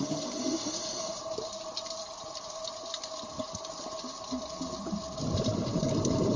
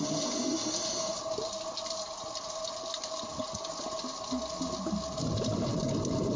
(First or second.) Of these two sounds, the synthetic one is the first